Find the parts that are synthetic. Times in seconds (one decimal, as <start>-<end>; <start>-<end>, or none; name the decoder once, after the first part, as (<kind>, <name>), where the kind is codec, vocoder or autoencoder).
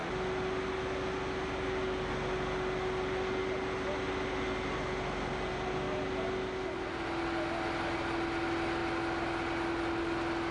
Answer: 3.4-5.7 (vocoder, BigVGAN v2)